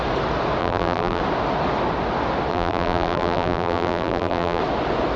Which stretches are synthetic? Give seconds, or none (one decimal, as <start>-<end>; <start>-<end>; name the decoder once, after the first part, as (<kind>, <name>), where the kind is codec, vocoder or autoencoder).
0.6-1.2 (vocoder, BigVGAN v2); 2.5-4.6